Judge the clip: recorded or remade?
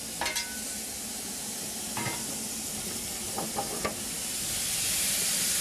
recorded